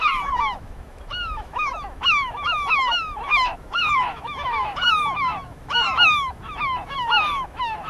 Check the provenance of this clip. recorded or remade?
remade